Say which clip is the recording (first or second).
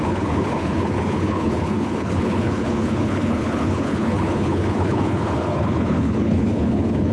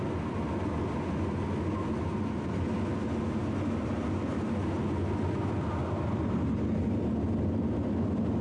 second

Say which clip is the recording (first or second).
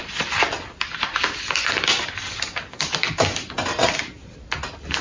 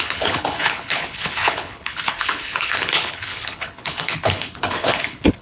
first